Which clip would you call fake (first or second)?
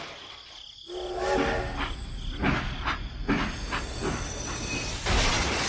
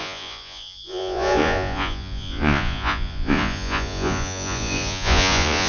second